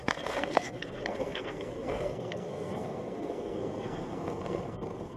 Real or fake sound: fake